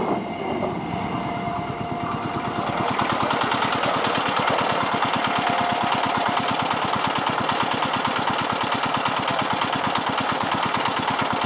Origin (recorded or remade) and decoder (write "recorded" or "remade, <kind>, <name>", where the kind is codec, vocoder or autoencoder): recorded